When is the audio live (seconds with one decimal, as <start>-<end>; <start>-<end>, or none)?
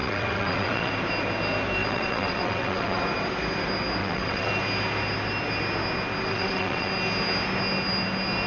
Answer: 0.9-1.8; 3.0-4.0; 4.5-6.3; 6.9-8.5